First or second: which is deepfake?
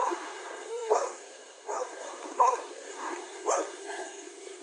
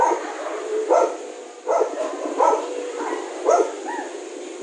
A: first